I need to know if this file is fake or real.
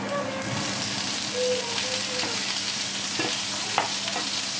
real